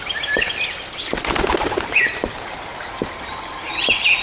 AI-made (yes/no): no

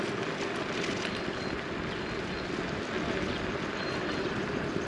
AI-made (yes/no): no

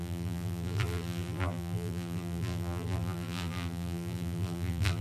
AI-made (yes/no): yes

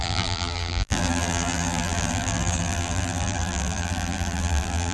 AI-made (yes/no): yes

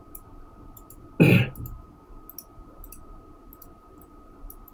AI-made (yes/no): no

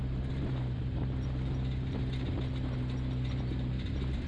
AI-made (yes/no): yes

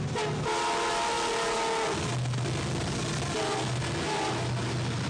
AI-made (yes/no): no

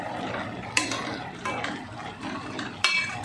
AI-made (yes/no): yes